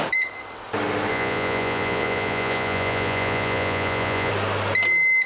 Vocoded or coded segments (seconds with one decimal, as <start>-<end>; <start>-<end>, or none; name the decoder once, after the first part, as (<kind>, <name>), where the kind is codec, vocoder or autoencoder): 1.1-4.3 (vocoder, Vocos)